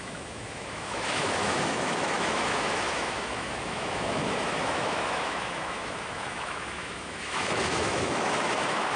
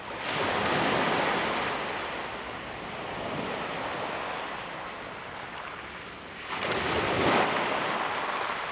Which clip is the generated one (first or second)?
first